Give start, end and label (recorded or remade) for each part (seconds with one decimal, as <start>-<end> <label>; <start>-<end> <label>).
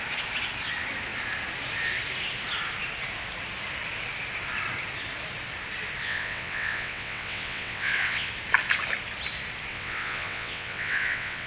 0.0-6.0 recorded; 6.0-8.3 remade; 8.3-9.7 recorded; 9.7-11.5 remade